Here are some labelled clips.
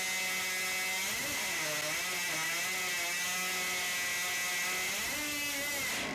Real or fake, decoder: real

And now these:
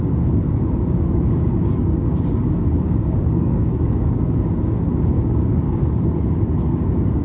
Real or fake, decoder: fake, codec, DAC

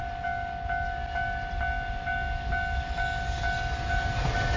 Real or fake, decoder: real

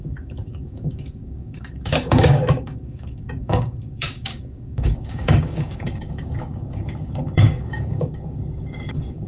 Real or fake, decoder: fake, codec, DAC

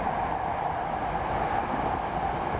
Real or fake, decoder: fake, vocoder, BigVGAN v2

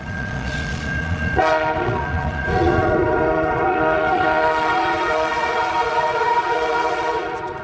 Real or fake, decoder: fake, vocoder, Vocos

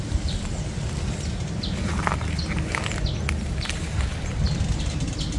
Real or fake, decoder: real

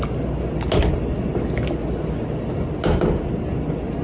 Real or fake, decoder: real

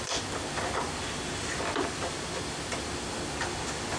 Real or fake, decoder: real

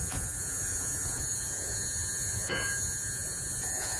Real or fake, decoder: fake, vocoder, Vocos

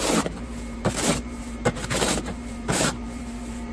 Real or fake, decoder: fake, vocoder, BigVGAN v2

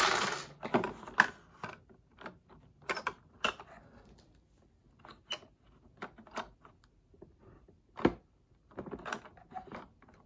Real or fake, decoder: real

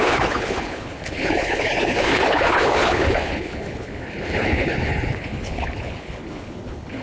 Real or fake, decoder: fake, codec, HILCodec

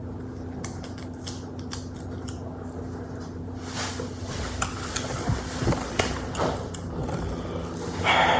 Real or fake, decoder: real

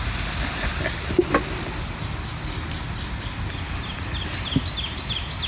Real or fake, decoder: real